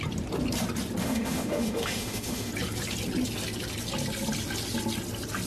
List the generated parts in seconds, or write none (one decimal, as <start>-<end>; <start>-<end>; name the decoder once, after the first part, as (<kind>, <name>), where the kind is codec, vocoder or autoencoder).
1.0-2.5 (autoencoder, DAC-VAE)